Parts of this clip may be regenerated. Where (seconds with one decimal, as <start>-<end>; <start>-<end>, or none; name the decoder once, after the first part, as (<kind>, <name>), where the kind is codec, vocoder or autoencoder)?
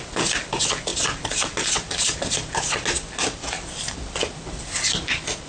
none